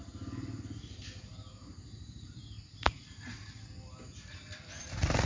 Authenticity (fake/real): real